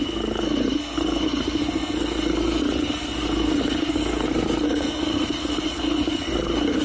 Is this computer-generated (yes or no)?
yes